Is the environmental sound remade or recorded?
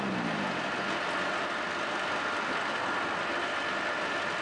recorded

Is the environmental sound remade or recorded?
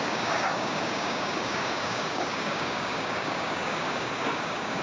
remade